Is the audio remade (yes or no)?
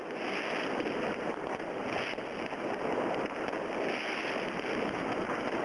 no